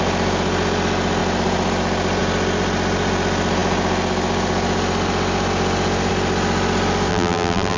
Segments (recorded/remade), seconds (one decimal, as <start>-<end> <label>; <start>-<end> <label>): 0.0-7.1 recorded; 7.1-7.8 remade